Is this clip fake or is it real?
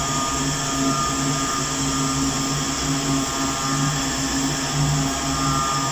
real